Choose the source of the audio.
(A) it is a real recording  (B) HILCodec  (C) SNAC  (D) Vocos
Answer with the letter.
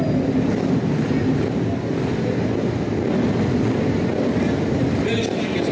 A